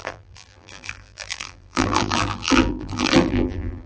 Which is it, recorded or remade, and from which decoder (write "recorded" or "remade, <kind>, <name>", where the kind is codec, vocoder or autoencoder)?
remade, vocoder, BigVGAN v2